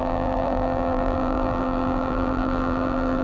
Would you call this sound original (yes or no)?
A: no